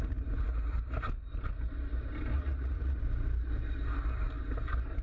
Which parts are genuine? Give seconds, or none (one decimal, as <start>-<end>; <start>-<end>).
0.0-2.3; 3.0-5.0